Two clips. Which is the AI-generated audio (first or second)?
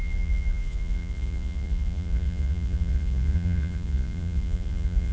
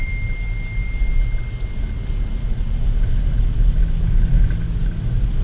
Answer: first